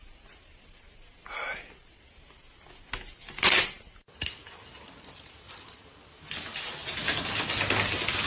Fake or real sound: real